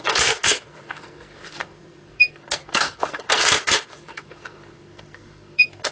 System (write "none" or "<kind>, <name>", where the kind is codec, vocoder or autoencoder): codec, SNAC